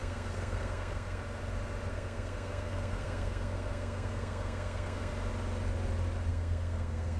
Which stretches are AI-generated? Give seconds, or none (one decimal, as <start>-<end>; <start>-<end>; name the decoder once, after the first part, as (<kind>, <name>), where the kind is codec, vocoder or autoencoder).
0.0-1.2 (codec, SNAC); 1.9-5.1; 6.3-7.2